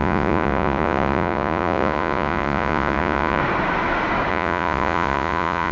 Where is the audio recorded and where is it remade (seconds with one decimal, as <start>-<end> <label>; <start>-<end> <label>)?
0.0-3.4 remade; 3.4-4.3 recorded; 4.3-5.7 remade